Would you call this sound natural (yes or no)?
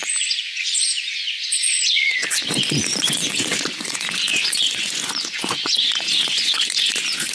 no